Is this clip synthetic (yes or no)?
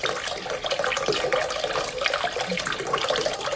no